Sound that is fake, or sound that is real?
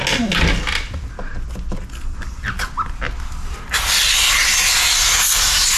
real